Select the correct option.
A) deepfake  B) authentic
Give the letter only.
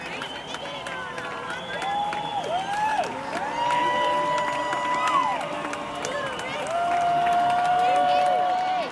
B